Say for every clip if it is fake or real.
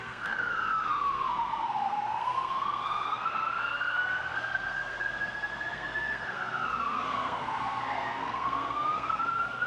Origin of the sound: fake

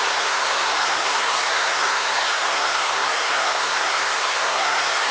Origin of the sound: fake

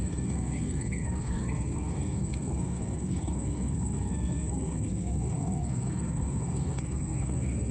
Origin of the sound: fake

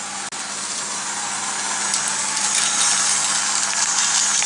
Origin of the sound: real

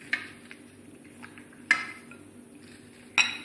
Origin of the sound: real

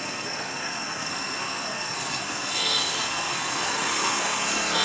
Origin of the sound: fake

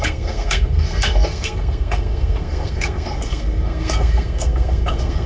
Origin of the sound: fake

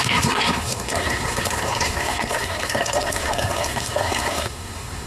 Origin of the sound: fake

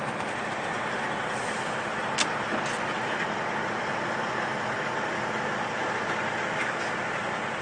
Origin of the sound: real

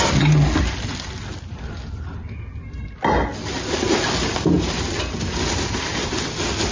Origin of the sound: real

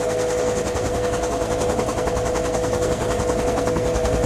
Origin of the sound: fake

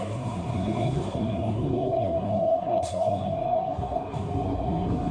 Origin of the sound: fake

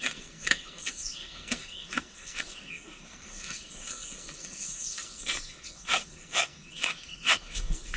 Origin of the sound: fake